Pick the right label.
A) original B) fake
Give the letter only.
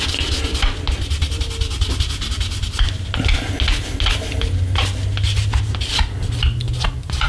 A